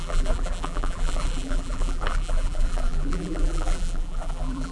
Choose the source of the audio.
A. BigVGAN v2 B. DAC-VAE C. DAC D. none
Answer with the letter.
A